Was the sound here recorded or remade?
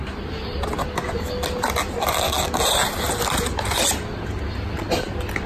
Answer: recorded